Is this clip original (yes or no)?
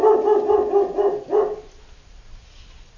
yes